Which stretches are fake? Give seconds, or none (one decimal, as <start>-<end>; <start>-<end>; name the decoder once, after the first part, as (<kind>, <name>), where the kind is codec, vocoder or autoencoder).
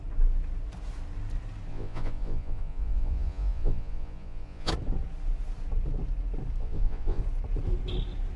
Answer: 1.7-4.7 (vocoder, Vocos); 6.6-7.2